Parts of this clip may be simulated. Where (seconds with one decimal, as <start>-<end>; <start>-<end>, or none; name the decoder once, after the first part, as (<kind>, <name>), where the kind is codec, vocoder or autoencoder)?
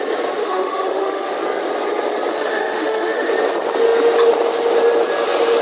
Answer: 0.4-1.3 (autoencoder, DAC-VAE); 2.3-3.3